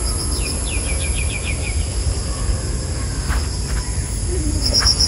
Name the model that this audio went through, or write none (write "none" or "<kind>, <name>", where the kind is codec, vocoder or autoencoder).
none